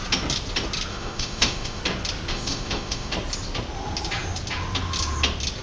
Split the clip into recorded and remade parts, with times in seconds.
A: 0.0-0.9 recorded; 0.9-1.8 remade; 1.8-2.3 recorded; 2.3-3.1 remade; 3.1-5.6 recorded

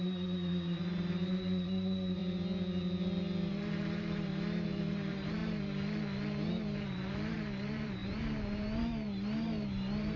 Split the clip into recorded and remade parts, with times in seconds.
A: 0.0-2.2 remade; 2.2-3.5 recorded; 3.5-10.2 remade